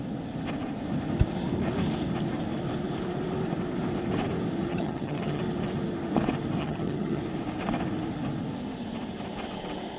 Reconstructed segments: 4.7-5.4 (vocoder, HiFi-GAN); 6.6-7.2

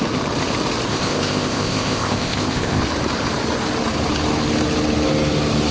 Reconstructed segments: 0.9-2.8 (codec, ZipCodec)

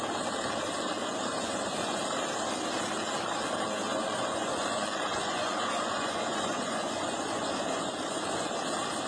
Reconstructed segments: 1.3-2.0 (vocoder, Vocos); 3.9-8.5

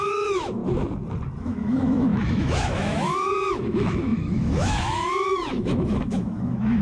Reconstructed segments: 0.0-0.6 (autoencoder, DAC-VAE); 1.4-6.8